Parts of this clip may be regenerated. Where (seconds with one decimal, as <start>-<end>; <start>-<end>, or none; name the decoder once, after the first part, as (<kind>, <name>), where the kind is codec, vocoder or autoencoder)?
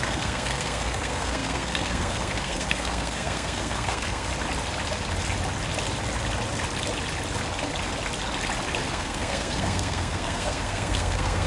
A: 0.0-4.3 (codec, SNAC); 8.9-11.5